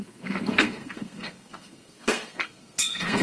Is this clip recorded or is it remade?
remade